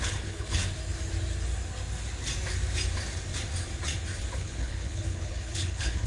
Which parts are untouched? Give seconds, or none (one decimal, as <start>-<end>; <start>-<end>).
0.6-4.3